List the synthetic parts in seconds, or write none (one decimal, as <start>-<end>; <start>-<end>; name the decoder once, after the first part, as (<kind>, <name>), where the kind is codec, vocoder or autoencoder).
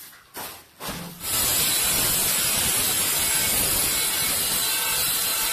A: none